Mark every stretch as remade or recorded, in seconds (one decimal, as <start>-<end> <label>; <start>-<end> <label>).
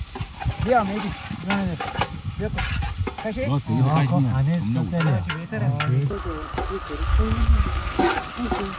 0.0-7.1 recorded; 7.1-8.0 remade; 8.0-8.8 recorded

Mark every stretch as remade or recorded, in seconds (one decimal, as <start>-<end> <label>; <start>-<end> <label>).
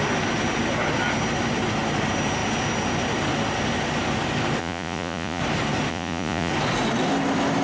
0.0-4.6 recorded; 4.6-5.4 remade; 5.4-5.9 recorded; 5.9-6.5 remade; 6.5-7.6 recorded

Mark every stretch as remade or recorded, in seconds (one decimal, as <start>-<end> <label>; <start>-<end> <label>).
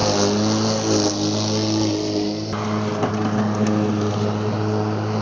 0.0-5.2 recorded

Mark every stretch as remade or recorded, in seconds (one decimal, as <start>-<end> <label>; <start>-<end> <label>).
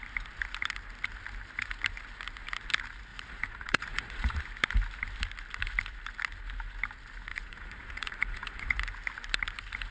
0.0-3.1 recorded; 3.1-4.4 remade; 4.4-7.3 recorded; 7.3-8.8 remade; 8.8-9.9 recorded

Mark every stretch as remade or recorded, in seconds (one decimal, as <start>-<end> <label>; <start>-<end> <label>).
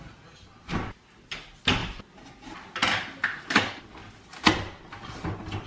0.0-5.7 recorded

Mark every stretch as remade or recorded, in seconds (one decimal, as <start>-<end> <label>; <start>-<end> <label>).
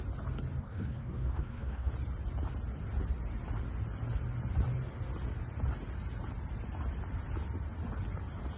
0.0-0.6 recorded; 0.6-1.9 remade; 1.9-8.6 recorded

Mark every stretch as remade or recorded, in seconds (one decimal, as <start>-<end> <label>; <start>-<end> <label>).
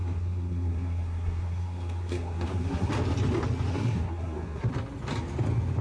0.0-2.9 remade; 2.9-3.7 recorded; 3.7-4.7 remade; 4.7-5.8 recorded